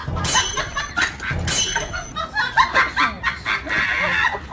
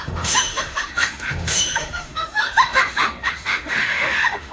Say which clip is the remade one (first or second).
second